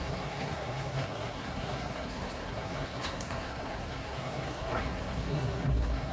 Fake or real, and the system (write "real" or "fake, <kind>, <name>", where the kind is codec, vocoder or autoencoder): fake, codec, SNAC